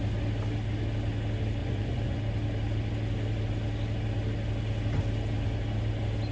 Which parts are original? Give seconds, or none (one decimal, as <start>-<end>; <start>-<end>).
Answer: 0.0-1.6; 2.2-6.3